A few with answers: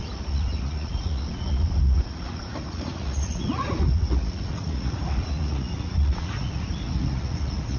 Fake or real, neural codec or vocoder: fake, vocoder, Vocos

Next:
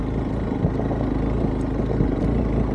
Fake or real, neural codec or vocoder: real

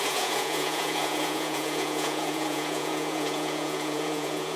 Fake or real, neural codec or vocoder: fake, vocoder, Vocos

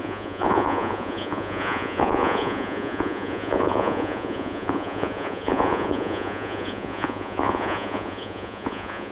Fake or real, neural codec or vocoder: fake, vocoder, Vocos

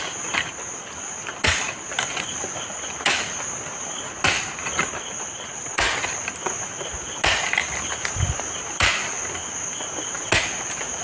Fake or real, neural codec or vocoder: real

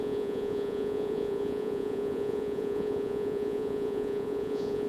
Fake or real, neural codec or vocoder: fake, vocoder, Vocos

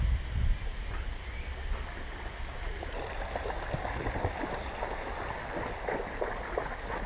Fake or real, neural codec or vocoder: real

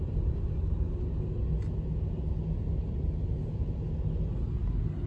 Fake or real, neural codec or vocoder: real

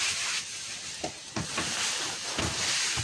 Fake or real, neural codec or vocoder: real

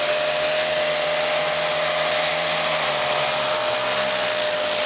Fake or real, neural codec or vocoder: real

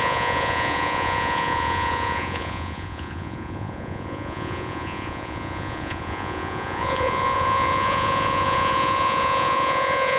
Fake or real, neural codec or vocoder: fake, vocoder, Vocos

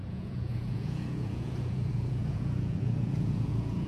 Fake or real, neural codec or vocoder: fake, vocoder, Vocos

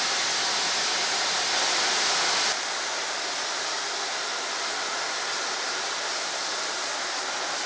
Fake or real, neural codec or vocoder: real